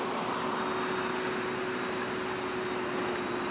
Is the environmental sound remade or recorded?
recorded